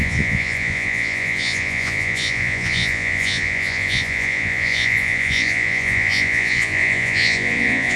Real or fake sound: fake